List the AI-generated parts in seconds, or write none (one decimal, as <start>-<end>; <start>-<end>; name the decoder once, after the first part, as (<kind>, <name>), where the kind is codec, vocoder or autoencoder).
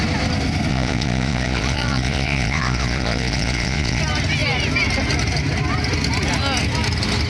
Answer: 0.7-4.0 (vocoder, Vocos)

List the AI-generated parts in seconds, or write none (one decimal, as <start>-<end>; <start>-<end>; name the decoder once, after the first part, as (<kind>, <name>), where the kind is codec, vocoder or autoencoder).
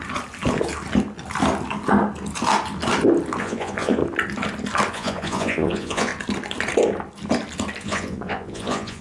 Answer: 3.4-4.0 (vocoder, Vocos); 4.9-6.1; 7.8-9.0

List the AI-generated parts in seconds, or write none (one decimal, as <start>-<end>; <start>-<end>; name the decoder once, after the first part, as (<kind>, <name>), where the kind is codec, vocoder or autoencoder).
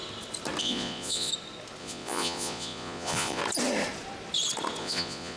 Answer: 0.6-1.3 (vocoder, Vocos); 1.8-3.4; 4.8-5.4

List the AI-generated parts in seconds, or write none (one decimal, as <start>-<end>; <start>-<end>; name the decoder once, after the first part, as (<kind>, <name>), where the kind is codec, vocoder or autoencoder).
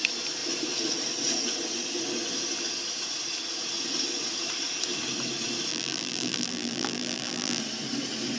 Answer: 5.7-7.6 (vocoder, BigVGAN v2)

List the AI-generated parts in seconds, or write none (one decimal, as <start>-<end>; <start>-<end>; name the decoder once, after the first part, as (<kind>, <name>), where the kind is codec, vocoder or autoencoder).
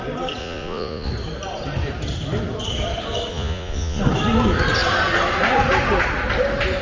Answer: 0.4-1.1 (vocoder, Vocos); 3.3-4.0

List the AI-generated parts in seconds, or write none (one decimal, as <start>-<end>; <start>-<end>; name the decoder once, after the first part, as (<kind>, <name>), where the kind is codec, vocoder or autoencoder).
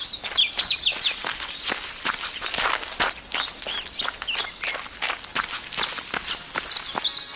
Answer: none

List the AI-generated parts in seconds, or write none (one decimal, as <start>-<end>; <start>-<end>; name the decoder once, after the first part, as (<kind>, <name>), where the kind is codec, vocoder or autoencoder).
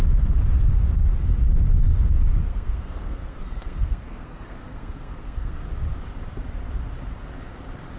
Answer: 2.5-5.6 (codec, SNAC)